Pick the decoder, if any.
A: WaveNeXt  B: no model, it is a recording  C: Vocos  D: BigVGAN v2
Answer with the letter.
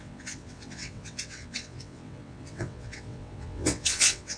A